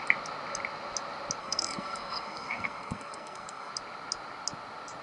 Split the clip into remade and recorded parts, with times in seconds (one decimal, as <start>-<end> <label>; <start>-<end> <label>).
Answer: 0.0-1.4 recorded; 1.4-3.7 remade; 3.7-5.0 recorded